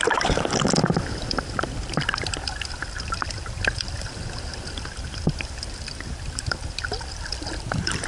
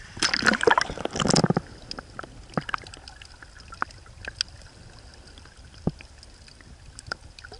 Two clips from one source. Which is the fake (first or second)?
first